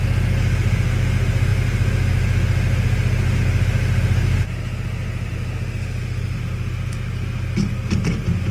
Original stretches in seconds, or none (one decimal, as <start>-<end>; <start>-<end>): 0.0-8.5